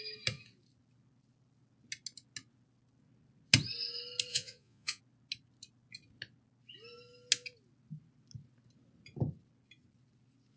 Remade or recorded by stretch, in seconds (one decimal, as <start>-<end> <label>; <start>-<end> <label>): 0.0-4.3 recorded; 4.3-5.0 remade; 5.0-10.6 recorded